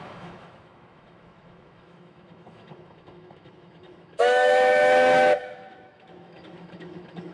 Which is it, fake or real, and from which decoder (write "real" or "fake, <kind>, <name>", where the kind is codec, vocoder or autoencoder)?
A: fake, autoencoder, DAC-VAE